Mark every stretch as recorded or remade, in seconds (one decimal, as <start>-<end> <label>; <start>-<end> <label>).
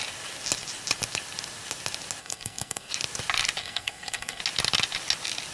0.0-2.2 recorded; 2.2-2.9 remade; 2.9-3.6 recorded; 3.6-4.4 remade; 4.4-5.5 recorded